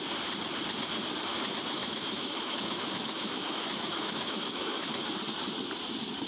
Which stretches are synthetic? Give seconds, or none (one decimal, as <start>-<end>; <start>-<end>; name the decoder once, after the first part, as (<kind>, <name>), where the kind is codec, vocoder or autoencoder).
1.8-4.9 (autoencoder, DAC-VAE)